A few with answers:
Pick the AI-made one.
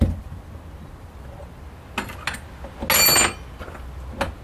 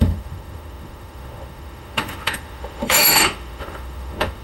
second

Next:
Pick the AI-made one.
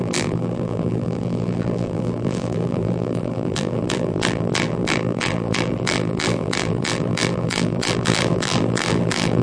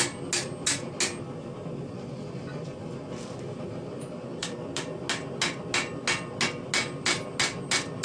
first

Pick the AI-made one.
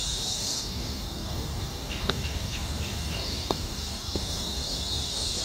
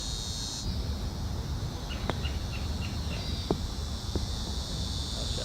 first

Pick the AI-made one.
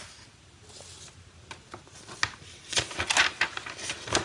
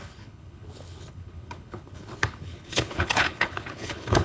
second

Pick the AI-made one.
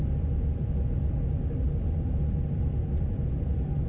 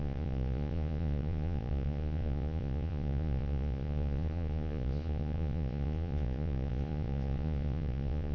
second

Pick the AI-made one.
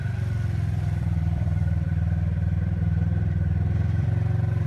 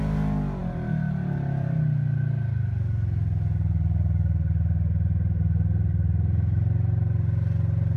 first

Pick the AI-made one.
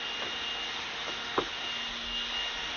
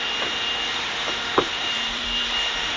second